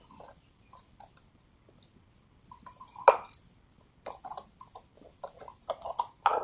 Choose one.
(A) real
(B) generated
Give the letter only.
A